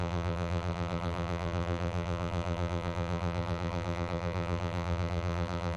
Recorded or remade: remade